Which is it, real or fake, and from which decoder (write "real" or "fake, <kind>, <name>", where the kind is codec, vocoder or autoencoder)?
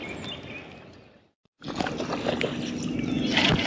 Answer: real